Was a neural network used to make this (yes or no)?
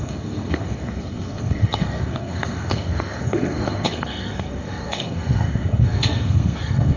yes